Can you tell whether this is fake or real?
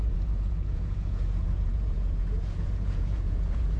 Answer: fake